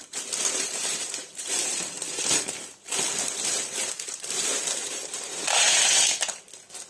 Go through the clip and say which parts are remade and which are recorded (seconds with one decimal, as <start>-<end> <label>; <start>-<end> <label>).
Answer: 0.0-2.3 remade; 2.3-4.8 recorded; 4.8-6.3 remade; 6.3-6.9 recorded